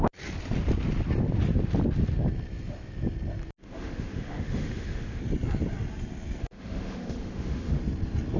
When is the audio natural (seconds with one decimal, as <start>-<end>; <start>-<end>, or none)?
0.0-3.6; 5.2-6.4; 7.8-8.4